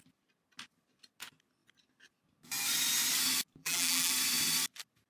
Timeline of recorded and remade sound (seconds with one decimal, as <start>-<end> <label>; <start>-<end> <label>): 0.0-3.6 recorded; 3.6-4.1 remade; 4.1-5.1 recorded